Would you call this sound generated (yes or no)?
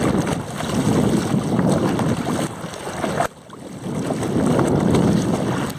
no